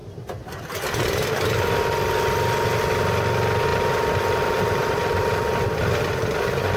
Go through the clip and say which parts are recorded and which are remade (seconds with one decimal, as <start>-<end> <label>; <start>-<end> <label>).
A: 0.0-3.7 recorded; 3.7-6.0 remade; 6.0-6.8 recorded